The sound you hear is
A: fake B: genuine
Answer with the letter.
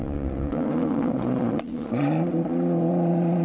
A